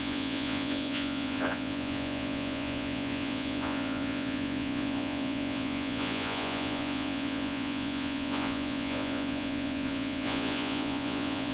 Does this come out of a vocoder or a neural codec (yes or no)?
yes